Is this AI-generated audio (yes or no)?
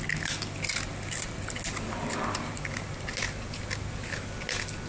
no